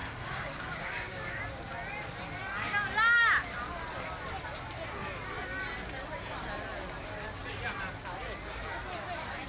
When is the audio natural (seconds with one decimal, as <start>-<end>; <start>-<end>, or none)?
1.4-9.5